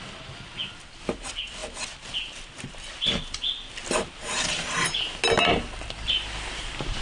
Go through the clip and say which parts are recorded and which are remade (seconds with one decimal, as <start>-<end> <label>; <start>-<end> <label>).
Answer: 0.0-7.0 recorded